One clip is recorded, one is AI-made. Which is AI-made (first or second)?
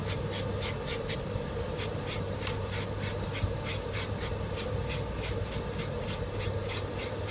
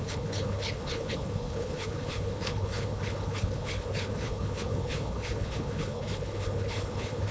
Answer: second